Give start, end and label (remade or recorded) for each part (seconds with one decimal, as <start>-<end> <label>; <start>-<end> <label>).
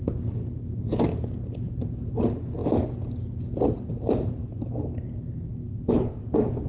0.0-4.4 recorded; 4.4-4.9 remade; 4.9-5.5 recorded; 5.5-6.2 remade; 6.2-6.7 recorded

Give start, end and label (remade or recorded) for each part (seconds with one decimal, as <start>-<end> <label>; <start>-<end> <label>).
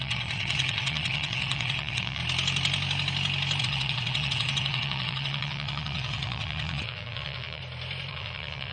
0.0-2.2 remade; 2.2-3.6 recorded; 3.6-7.6 remade; 7.6-8.1 recorded; 8.1-8.7 remade